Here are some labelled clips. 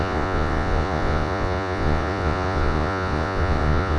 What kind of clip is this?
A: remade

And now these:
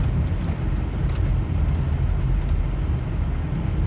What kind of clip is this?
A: recorded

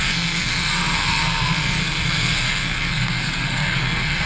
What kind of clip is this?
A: remade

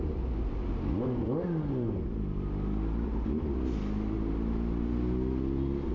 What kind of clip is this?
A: recorded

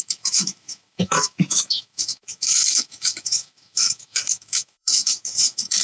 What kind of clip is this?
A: remade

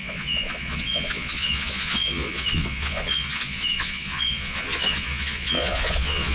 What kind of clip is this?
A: remade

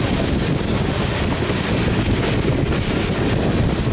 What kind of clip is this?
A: recorded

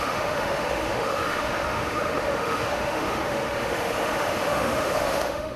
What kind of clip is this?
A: remade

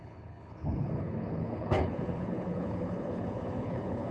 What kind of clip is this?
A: remade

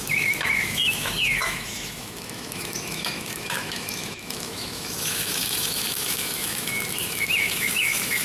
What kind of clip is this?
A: remade